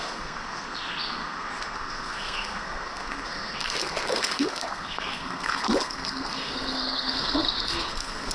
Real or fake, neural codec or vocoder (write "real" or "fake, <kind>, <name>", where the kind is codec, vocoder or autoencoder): fake, codec, SNAC